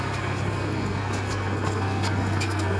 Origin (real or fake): fake